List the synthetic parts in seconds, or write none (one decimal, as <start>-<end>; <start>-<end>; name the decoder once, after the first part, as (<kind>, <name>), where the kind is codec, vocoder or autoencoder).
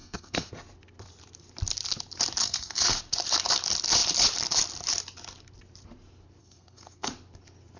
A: 0.0-0.5 (codec, SNAC); 2.4-3.0; 6.4-7.1